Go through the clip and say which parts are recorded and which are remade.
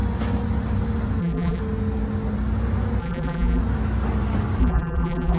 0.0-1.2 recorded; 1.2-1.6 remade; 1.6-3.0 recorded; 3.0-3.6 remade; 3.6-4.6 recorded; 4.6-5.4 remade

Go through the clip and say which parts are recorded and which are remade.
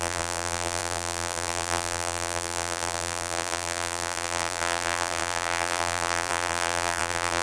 0.0-7.4 remade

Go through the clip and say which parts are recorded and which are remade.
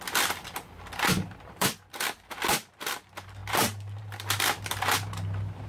0.0-5.7 remade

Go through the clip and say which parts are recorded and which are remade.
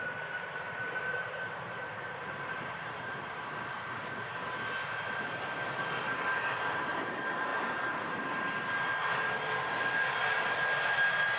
0.0-4.0 remade; 4.0-6.9 recorded; 6.9-7.5 remade; 7.5-11.4 recorded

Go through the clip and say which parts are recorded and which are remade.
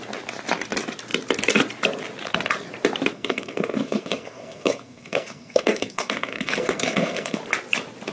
0.0-3.1 recorded; 3.1-7.4 remade; 7.4-8.1 recorded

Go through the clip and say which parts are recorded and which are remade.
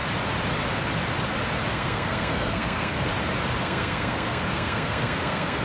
0.0-1.7 recorded; 1.7-3.1 remade; 3.1-3.6 recorded; 3.6-5.6 remade